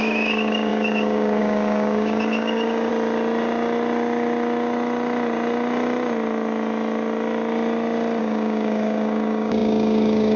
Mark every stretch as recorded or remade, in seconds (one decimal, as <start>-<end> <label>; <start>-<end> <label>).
0.0-2.9 remade; 2.9-8.2 recorded; 8.2-10.4 remade